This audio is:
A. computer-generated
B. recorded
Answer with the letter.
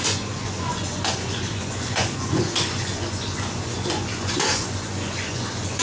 A